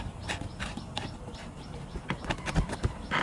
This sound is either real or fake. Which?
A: real